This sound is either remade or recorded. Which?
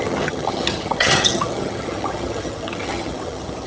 remade